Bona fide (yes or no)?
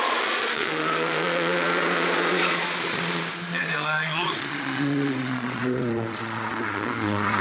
no